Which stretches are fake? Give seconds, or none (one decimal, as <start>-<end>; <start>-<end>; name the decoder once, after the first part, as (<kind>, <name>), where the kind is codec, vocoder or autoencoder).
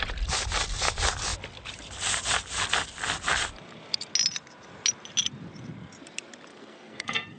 6.5-7.4 (codec, SNAC)